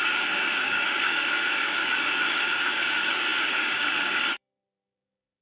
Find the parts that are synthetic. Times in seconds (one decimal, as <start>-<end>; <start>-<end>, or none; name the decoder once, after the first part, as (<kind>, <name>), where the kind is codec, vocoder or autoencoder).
0.0-5.4 (codec, DAC)

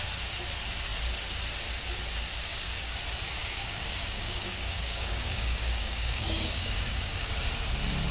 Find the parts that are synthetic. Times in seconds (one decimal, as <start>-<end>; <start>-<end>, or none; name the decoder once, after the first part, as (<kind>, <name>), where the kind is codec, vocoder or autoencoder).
2.5-3.0 (codec, DAC); 3.4-7.3

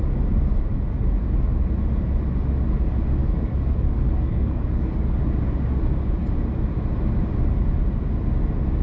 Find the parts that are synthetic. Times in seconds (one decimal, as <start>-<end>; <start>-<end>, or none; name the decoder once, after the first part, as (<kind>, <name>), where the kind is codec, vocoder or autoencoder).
3.2-5.2 (codec, DAC)

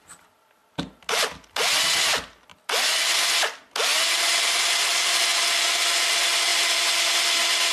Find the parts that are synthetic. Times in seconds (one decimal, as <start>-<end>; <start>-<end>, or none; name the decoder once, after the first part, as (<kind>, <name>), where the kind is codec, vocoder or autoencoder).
none

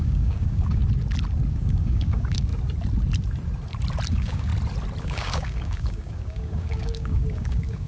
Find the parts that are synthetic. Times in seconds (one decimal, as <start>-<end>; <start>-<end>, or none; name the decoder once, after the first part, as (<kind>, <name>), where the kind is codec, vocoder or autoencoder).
0.0-0.8 (codec, DAC); 1.5-2.5; 4.1-4.5; 5.0-7.9